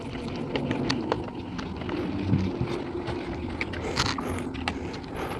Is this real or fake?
real